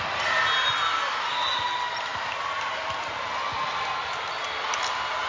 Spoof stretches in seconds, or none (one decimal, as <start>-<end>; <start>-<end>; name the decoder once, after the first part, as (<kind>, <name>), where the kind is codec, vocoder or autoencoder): none